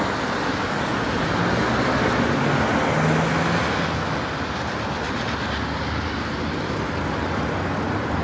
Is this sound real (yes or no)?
yes